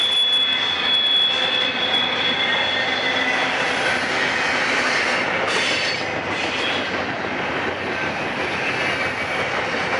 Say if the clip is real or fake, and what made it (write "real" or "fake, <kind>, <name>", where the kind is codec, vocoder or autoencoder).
real